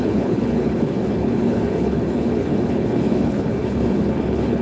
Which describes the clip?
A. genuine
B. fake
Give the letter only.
B